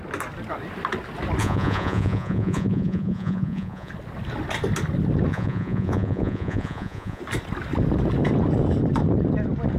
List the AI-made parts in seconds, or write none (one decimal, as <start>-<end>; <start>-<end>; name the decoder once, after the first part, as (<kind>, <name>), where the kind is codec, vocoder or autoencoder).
1.4-3.9 (vocoder, Vocos); 5.3-7.2